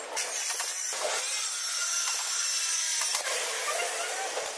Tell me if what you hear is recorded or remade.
recorded